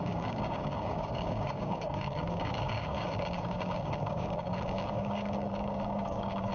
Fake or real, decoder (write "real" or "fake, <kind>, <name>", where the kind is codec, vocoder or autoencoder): fake, codec, DAC